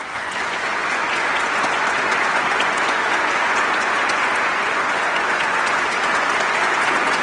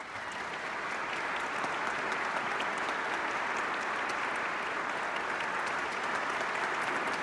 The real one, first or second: second